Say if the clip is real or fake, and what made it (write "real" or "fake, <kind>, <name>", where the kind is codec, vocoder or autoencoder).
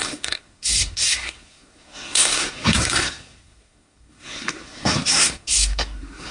fake, codec, SNAC